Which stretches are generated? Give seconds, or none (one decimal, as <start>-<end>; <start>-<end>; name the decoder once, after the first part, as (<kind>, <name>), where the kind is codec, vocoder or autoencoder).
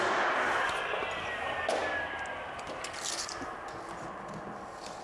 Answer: none